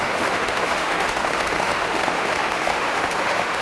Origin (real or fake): fake